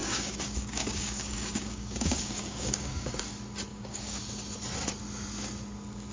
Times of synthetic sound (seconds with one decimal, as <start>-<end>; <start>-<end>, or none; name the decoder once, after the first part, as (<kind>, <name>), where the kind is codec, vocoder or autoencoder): 0.0-3.2 (codec, DAC); 3.7-4.2